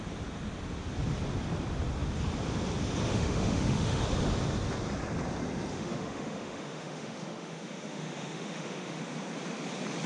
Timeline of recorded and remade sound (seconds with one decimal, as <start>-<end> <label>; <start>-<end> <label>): 0.0-3.1 recorded; 3.1-4.0 remade; 4.0-5.7 recorded; 5.7-9.0 remade; 9.0-10.1 recorded